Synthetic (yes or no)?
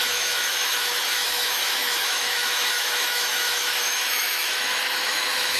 yes